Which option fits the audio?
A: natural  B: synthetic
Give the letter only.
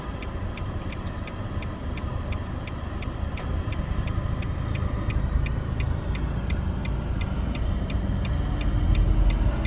A